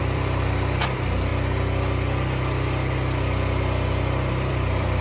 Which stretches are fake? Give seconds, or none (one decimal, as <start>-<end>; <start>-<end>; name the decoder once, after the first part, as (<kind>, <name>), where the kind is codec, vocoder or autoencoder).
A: 0.0-1.3 (vocoder, BigVGAN v2); 4.3-5.0